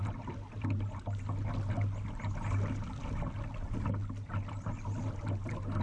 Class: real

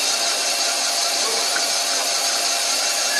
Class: real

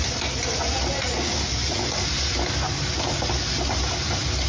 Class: real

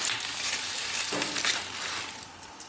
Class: real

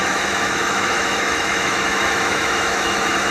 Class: fake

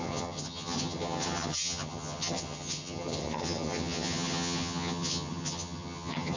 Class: fake